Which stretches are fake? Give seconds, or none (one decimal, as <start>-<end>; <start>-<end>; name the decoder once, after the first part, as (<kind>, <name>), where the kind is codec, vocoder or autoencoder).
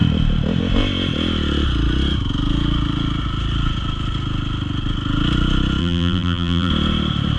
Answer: 5.8-6.7 (vocoder, BigVGAN v2)